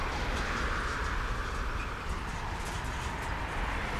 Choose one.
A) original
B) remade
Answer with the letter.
A